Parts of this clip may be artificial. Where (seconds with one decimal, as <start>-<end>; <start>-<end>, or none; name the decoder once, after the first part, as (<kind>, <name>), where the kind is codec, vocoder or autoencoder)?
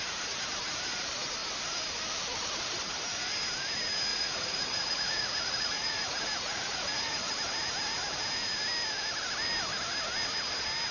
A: 4.1-7.3 (vocoder, Vocos)